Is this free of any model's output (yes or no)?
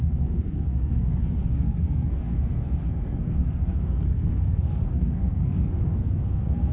no